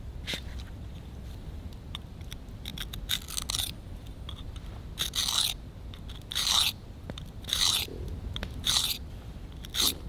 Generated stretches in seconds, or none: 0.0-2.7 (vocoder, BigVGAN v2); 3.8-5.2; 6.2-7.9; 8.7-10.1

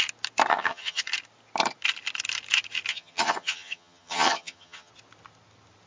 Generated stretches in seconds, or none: 0.5-1.0 (vocoder, HiFi-GAN); 2.9-4.9

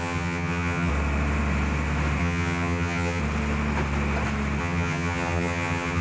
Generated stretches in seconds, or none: 0.0-0.9 (vocoder, HiFi-GAN); 2.2-3.2; 4.6-6.0

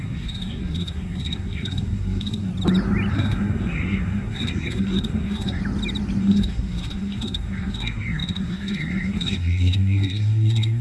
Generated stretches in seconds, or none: 0.0-2.5 (codec, SNAC); 3.1-5.6; 6.2-10.8

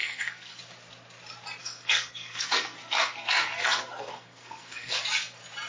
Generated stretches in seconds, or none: 0.0-0.6 (codec, SNAC); 1.6-5.0

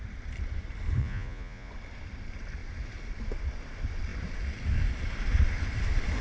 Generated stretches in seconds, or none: 1.0-1.7 (vocoder, Vocos)

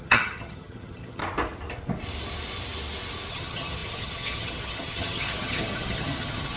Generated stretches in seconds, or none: 0.0-1.2 (vocoder, HiFi-GAN); 3.3-6.6